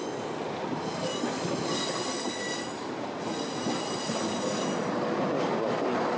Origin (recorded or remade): recorded